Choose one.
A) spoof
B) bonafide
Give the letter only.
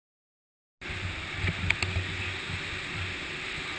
B